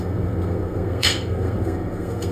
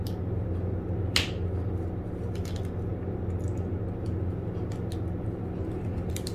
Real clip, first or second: second